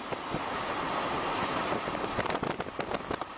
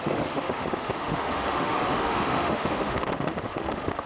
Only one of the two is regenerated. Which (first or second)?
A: second